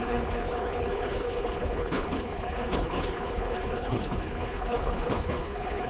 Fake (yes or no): yes